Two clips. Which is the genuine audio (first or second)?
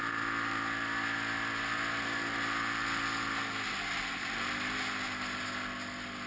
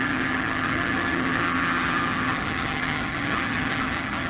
first